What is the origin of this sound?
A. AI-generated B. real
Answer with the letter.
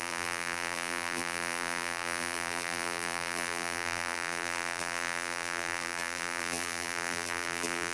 A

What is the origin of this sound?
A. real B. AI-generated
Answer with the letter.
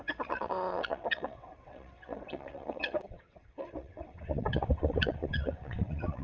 B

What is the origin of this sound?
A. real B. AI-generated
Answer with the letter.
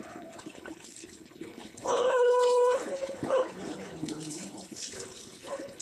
B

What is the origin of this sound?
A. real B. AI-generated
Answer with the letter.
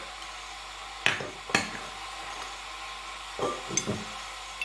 A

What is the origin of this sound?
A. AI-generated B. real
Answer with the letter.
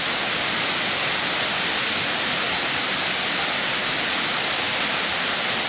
B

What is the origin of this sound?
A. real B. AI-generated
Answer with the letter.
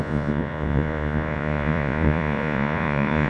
B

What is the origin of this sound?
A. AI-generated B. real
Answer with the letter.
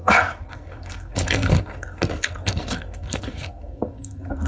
A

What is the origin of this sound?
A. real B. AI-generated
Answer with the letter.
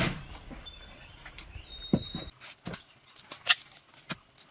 A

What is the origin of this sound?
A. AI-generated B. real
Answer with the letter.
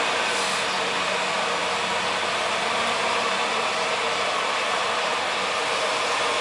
B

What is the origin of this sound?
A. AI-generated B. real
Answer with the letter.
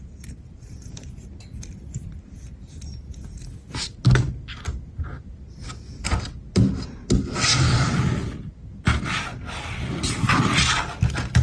B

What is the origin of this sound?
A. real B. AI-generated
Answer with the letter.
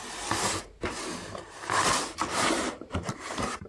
B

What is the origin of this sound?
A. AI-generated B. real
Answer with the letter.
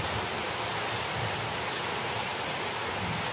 B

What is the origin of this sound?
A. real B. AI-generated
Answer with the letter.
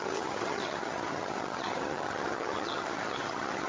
B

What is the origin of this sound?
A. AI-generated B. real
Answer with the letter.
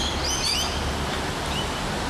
B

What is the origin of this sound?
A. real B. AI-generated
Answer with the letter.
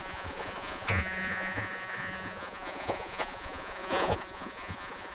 B